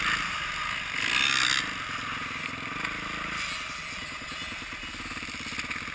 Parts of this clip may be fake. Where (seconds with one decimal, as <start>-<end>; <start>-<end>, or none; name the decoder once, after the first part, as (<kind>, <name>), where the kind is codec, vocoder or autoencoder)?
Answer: none